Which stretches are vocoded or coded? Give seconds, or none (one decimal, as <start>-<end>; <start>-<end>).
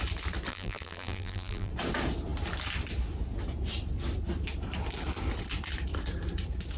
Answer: 0.5-1.7